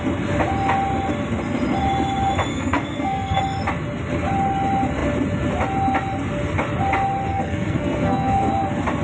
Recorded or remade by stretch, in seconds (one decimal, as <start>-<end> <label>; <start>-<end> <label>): 0.0-2.5 recorded; 2.5-3.4 remade; 3.4-7.3 recorded; 7.3-8.5 remade; 8.5-9.0 recorded